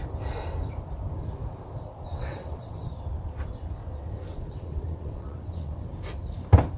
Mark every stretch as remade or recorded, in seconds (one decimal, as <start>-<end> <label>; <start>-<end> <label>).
0.0-2.1 recorded; 2.1-2.9 remade; 2.9-4.3 recorded; 4.3-5.9 remade; 5.9-6.8 recorded